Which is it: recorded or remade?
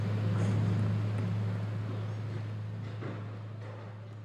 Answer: recorded